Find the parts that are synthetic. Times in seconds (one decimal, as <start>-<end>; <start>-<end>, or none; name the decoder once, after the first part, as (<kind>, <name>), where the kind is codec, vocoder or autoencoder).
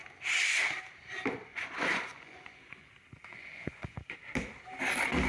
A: 1.5-2.9 (vocoder, Vocos); 3.3-4.0